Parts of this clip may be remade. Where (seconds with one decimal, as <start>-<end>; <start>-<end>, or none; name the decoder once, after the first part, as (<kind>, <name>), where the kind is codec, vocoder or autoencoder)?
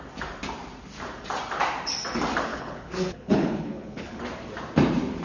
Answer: 2.5-4.2 (codec, HILCodec)